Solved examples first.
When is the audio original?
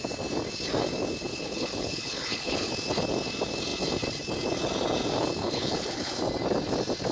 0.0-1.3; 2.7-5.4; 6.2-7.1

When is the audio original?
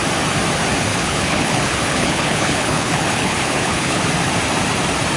0.0-0.9; 4.0-5.2